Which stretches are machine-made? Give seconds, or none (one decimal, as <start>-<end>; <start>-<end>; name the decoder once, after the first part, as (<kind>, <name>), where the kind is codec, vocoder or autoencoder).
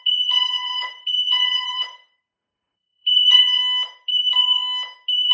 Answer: 0.0-3.6 (vocoder, Vocos)